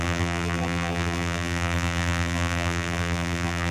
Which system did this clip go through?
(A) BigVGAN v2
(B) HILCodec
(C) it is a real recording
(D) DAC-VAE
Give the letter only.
A